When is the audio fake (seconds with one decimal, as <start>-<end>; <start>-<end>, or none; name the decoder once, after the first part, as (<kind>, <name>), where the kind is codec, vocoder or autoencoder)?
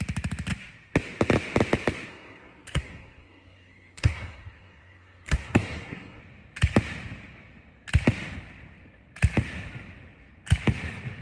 2.1-6.2 (codec, SNAC)